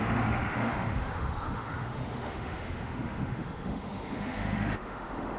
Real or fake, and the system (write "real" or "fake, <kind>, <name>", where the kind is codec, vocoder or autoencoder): fake, autoencoder, DAC-VAE